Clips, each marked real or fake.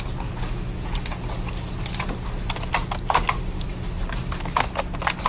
real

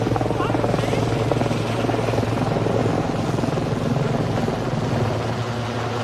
real